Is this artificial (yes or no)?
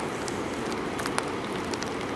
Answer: no